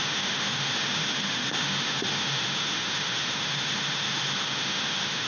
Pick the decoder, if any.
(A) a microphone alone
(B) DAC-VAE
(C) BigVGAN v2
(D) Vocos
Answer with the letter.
B